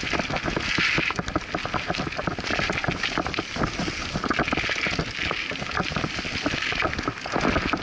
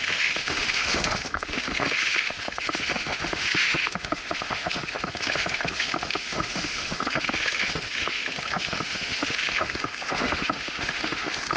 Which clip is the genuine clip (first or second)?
first